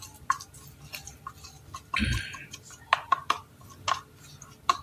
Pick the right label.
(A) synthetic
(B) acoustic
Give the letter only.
B